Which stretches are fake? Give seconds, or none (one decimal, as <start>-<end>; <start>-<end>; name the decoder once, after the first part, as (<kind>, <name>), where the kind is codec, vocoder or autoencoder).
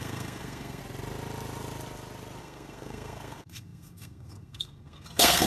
0.0-0.8 (codec, SNAC); 2.4-5.5